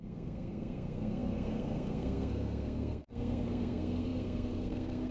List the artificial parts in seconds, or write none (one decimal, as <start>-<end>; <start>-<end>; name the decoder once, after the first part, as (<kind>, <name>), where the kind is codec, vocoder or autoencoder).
0.0-5.1 (codec, SNAC)